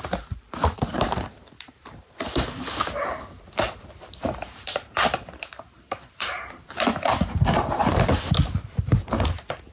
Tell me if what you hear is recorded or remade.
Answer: remade